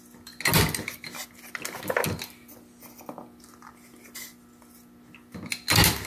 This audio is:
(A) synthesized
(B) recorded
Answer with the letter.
B